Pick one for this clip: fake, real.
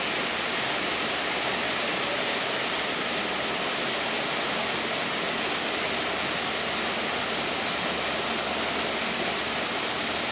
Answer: real